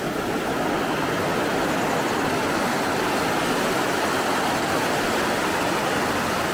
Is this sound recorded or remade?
recorded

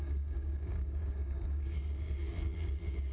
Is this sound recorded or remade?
remade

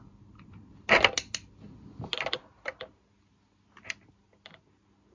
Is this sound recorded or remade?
recorded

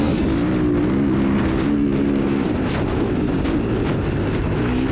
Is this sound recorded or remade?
recorded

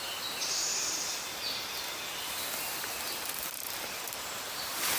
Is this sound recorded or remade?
recorded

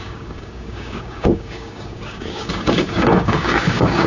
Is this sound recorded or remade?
remade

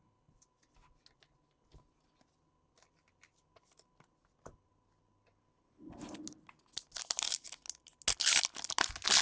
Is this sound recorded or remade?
recorded